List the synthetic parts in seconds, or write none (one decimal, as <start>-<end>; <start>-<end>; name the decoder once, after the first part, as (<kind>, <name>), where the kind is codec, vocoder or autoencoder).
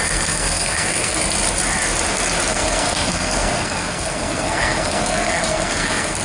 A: 0.0-1.2 (codec, SNAC); 2.5-6.2